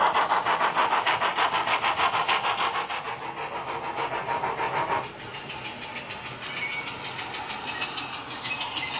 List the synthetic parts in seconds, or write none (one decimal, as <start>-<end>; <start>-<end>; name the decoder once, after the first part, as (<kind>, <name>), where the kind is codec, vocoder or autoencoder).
none